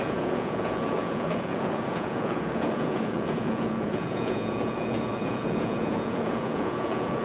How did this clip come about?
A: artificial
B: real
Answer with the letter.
A